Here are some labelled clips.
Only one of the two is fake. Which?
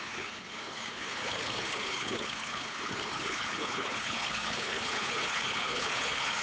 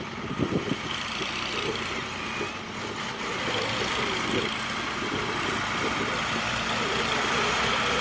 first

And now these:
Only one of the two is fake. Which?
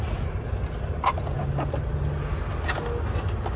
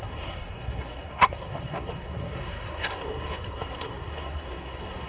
second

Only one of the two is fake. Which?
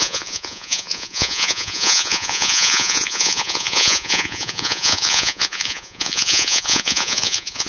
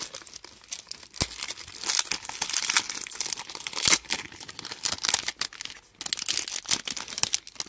first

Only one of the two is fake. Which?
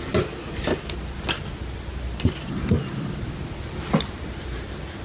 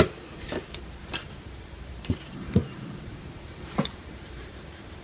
second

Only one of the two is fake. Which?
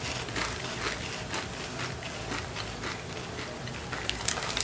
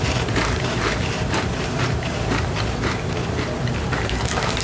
second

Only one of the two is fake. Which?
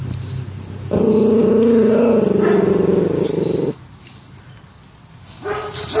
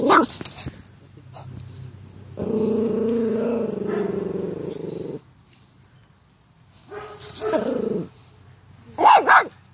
first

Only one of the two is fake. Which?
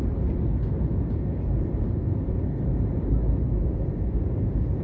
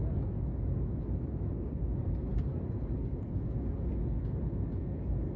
first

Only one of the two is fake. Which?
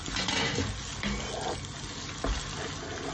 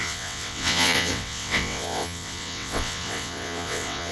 second